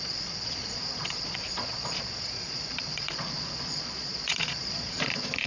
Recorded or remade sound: remade